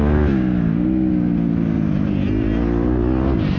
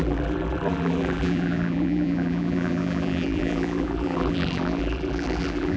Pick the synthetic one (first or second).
second